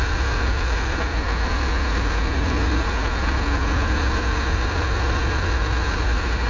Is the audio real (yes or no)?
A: no